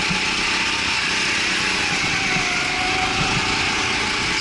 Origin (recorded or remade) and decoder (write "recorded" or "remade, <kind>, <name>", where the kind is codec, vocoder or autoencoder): recorded